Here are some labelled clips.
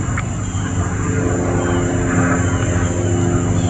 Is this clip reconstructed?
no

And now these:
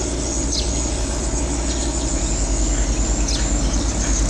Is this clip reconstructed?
no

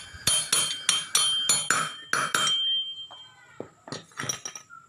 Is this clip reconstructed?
no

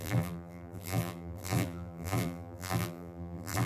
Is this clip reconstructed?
yes